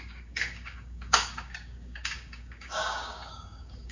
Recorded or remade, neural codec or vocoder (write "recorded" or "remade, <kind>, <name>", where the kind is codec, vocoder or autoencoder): remade, codec, DAC